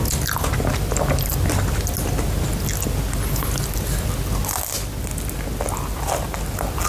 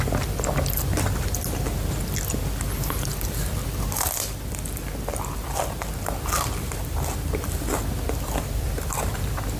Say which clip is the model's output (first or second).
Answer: second